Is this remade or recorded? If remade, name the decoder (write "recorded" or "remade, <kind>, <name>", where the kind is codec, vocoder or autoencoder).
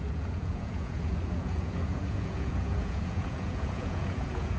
remade, vocoder, Vocos